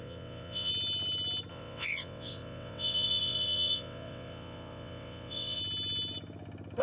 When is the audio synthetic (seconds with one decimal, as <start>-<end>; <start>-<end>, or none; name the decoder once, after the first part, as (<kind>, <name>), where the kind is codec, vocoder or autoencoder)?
0.0-0.7 (vocoder, WaveNeXt); 1.5-5.6